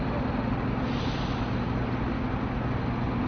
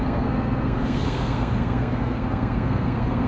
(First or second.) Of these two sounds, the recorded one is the first